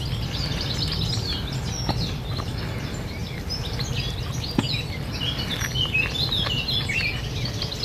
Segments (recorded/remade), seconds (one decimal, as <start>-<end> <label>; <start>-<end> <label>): 0.0-7.8 recorded